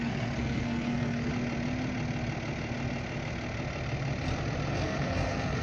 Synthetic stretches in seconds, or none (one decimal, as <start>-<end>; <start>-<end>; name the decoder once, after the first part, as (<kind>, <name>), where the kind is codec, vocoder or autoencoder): 0.0-1.3 (codec, SNAC); 4.7-5.6